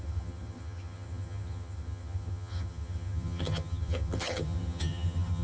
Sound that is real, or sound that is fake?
fake